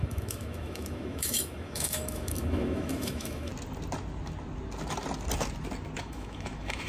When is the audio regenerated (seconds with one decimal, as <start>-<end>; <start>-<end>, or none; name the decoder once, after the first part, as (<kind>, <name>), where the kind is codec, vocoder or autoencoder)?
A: 0.0-3.5 (autoencoder, DAC-VAE); 6.0-6.9